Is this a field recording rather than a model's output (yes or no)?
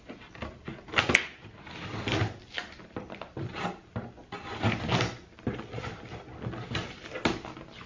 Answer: yes